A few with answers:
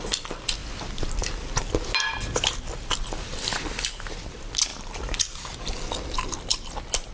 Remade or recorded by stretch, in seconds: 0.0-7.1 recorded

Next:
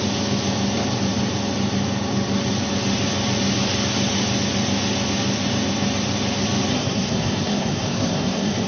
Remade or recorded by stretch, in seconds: 0.0-6.7 recorded; 6.7-8.7 remade

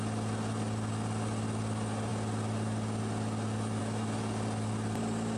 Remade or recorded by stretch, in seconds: 0.0-5.4 recorded

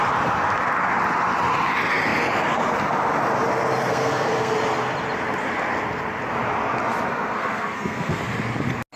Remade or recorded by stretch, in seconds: 0.0-3.9 recorded; 3.9-4.5 remade; 4.5-7.1 recorded; 7.1-8.2 remade; 8.2-9.0 recorded

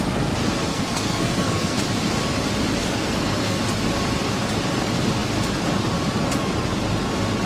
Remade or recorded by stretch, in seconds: 0.0-0.7 recorded; 0.7-1.8 remade; 1.8-2.8 recorded; 2.8-3.6 remade; 3.6-7.5 recorded